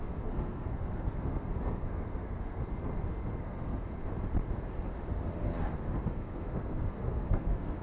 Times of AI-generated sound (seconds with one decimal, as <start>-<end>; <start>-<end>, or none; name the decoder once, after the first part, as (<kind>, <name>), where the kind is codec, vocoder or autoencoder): 0.0-2.6 (codec, SNAC); 3.4-3.9; 6.1-7.8